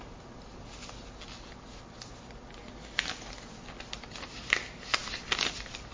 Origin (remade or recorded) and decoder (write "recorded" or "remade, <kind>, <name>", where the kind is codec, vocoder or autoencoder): recorded